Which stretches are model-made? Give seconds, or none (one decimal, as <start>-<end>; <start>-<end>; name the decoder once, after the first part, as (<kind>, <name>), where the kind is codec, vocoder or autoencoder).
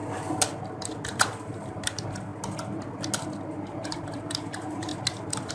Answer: 0.8-2.3 (vocoder, BigVGAN v2); 3.6-4.9